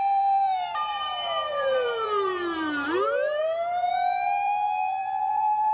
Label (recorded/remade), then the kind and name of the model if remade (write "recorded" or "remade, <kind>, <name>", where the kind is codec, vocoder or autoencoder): remade, vocoder, BigVGAN v2